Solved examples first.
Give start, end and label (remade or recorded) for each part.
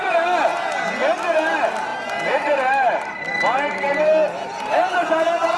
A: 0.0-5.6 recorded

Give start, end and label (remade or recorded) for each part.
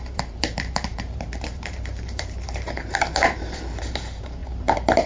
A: 0.0-5.1 remade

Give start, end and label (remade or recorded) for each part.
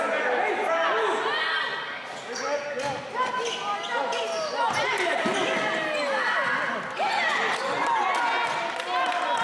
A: 0.0-9.4 recorded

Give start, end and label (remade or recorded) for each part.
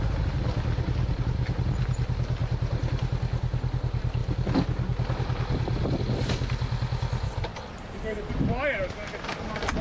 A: 0.0-9.8 recorded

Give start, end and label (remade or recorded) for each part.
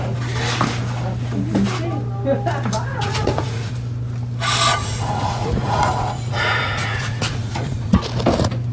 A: 0.0-2.9 recorded; 2.9-3.7 remade; 3.7-4.7 recorded; 4.7-8.0 remade; 8.0-8.7 recorded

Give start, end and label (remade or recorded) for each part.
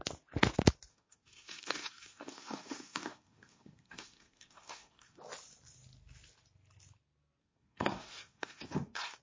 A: 0.0-0.9 recorded; 0.9-5.2 remade; 5.2-7.4 recorded; 7.4-9.2 remade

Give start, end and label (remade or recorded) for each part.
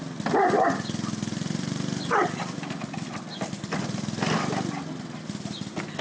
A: 0.0-0.4 recorded; 0.4-4.0 remade; 4.0-6.0 recorded